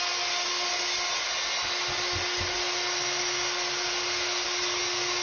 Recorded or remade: recorded